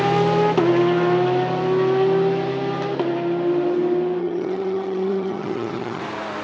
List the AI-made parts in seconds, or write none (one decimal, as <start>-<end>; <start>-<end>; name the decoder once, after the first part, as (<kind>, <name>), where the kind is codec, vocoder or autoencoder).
4.2-6.0 (vocoder, HiFi-GAN)